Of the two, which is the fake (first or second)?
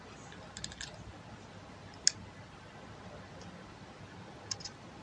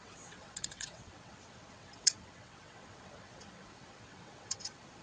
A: second